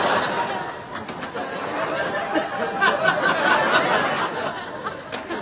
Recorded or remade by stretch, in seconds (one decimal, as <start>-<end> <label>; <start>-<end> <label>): 0.0-5.4 recorded